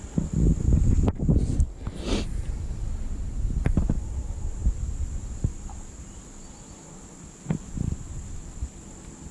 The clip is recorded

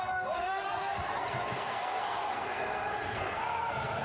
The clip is remade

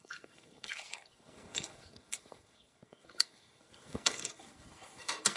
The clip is remade